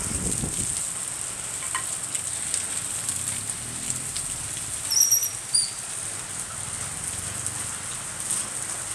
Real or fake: real